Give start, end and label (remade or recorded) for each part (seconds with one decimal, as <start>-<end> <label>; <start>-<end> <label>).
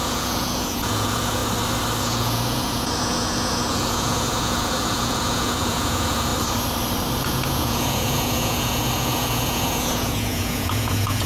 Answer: 0.0-1.4 remade; 1.4-2.0 recorded; 2.0-6.3 remade; 6.3-7.2 recorded; 7.2-11.3 remade